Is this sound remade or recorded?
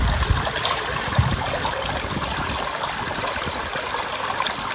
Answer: recorded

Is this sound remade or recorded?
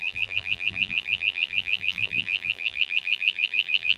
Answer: remade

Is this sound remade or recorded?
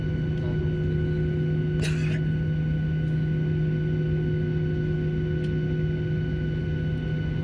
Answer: recorded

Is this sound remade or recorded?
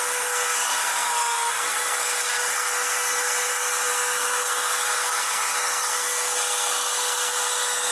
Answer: remade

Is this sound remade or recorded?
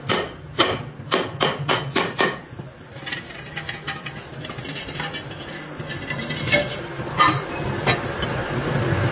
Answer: recorded